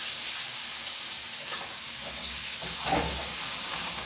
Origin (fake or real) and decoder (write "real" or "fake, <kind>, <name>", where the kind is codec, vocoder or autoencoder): fake, codec, DAC